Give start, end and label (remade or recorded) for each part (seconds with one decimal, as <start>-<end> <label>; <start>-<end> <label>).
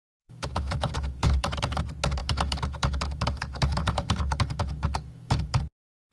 0.0-1.8 remade; 1.8-2.2 recorded; 2.2-5.6 remade; 5.6-6.1 recorded